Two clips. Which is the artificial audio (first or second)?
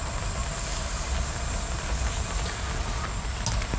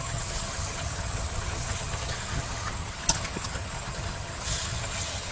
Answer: second